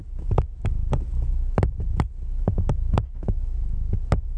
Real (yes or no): yes